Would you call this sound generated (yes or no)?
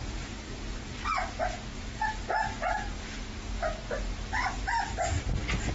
no